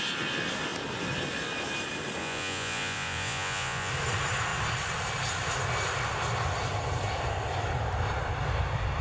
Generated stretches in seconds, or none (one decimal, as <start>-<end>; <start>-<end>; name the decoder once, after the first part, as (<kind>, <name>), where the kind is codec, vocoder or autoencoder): 2.2-3.9 (vocoder, Vocos)